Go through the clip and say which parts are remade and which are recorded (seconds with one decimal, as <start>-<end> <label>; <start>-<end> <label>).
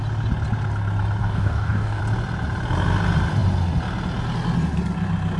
0.0-1.2 recorded; 1.2-2.0 remade; 2.0-5.4 recorded